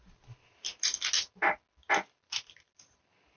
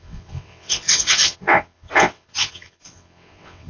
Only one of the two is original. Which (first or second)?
first